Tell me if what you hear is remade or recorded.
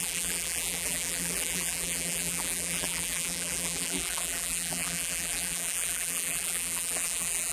remade